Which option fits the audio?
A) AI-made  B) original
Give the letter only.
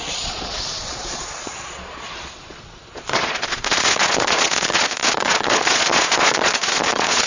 A